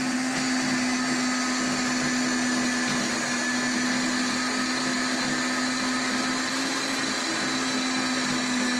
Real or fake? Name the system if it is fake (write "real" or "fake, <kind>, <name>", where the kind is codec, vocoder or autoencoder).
real